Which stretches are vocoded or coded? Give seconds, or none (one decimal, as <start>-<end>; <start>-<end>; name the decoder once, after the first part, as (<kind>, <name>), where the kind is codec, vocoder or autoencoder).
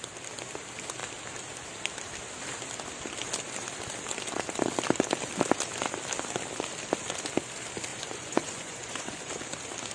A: 7.9-9.3 (vocoder, Vocos)